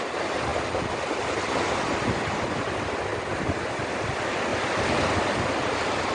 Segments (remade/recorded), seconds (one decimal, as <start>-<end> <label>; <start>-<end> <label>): 0.0-6.1 recorded